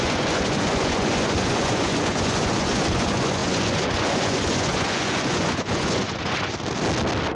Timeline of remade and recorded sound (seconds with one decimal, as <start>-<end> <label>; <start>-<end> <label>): 0.0-6.5 remade; 6.5-7.3 recorded